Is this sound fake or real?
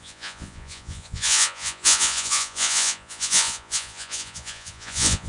fake